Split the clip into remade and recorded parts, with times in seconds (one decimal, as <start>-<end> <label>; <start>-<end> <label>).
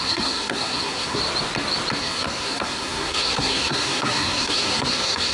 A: 0.0-1.2 remade; 1.2-2.0 recorded; 2.0-5.3 remade